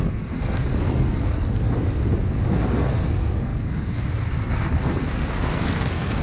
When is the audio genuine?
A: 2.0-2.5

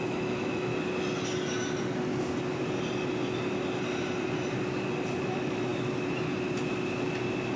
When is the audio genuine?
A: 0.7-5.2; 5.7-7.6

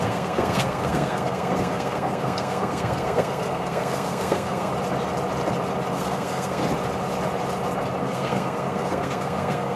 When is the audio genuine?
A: 4.7-5.9; 6.6-8.0

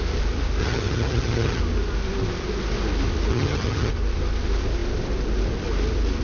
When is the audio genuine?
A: 0.0-0.6; 1.6-3.3; 3.9-6.2

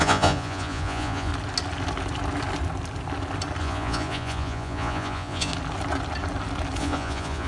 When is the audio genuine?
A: 1.3-3.6; 5.5-6.8

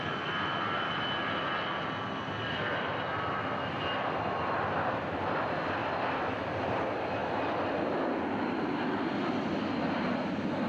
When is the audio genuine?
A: 0.0-10.7

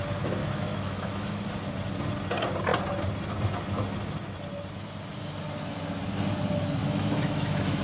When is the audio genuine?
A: 0.0-0.4; 1.5-6.8